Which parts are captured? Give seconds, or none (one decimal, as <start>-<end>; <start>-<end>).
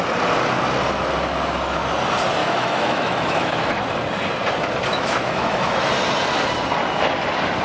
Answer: 0.0-2.4; 3.8-4.9; 5.9-7.6